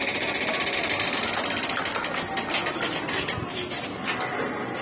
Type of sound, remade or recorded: recorded